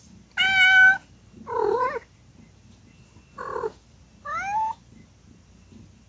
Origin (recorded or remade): recorded